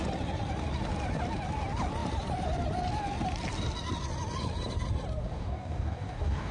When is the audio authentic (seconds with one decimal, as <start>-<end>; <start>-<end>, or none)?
0.0-5.2